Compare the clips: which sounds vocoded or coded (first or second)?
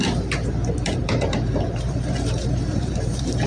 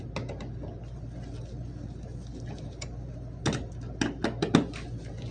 first